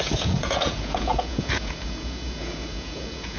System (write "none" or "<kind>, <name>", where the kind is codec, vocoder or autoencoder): vocoder, Vocos